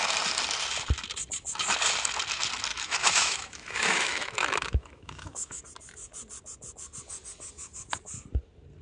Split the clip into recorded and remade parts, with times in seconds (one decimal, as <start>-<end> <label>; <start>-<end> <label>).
0.0-2.7 recorded; 2.7-5.6 remade; 5.6-8.8 recorded

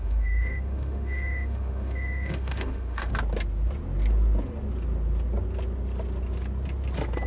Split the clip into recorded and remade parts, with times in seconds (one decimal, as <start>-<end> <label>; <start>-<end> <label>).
0.0-3.1 remade; 3.1-7.3 recorded

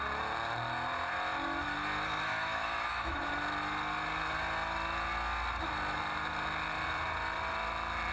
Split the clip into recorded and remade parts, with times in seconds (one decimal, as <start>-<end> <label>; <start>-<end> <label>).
0.0-2.3 recorded; 2.3-3.3 remade; 3.3-8.1 recorded

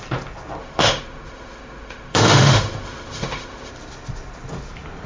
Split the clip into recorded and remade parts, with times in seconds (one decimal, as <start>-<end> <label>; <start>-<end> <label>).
0.0-0.6 recorded; 0.6-3.7 remade; 3.7-5.1 recorded

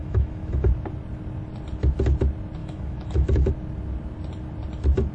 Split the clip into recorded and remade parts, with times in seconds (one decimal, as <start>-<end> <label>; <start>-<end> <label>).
0.0-0.7 remade; 0.7-2.6 recorded; 2.6-3.5 remade; 3.5-5.1 recorded

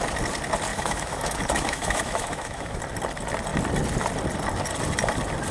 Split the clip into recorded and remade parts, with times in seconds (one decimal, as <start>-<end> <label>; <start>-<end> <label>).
0.0-0.7 recorded; 0.7-2.8 remade; 2.8-5.5 recorded

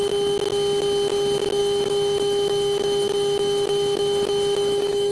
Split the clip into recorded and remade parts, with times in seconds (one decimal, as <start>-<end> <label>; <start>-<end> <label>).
0.0-1.6 recorded; 1.6-5.1 remade

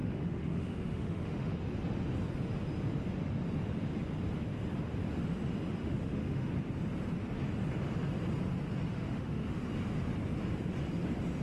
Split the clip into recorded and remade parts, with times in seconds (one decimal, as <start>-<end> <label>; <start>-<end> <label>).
0.0-1.6 remade; 1.6-5.8 recorded; 5.8-6.5 remade; 6.5-8.9 recorded; 8.9-9.6 remade; 9.6-11.4 recorded